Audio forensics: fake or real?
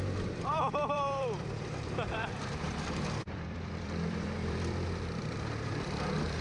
fake